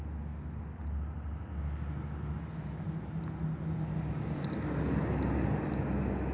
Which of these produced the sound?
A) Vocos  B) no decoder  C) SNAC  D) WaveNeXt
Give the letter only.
B